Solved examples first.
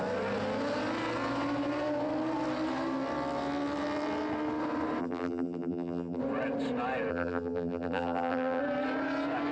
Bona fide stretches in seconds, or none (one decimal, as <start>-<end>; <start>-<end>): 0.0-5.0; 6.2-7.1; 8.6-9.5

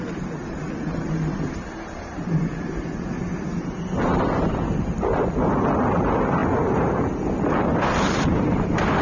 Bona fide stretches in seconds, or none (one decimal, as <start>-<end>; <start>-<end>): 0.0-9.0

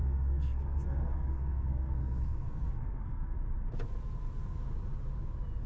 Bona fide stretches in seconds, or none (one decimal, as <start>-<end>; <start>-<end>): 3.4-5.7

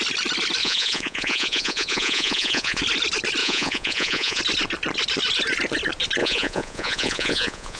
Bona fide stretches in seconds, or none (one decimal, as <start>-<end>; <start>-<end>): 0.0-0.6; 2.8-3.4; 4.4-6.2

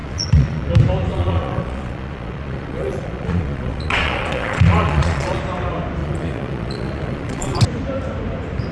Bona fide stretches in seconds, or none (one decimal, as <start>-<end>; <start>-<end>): 0.7-1.1; 5.4-6.0; 7.6-8.7

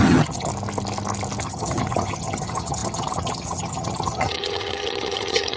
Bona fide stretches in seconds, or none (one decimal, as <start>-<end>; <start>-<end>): 0.5-1.4